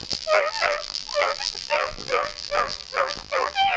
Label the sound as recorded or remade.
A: remade